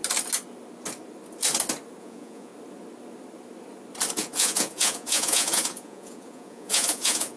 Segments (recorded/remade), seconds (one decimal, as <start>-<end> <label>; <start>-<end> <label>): 0.0-2.0 recorded; 2.0-2.5 remade; 2.5-4.1 recorded; 4.1-7.4 remade